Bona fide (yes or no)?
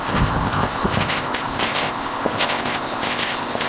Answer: no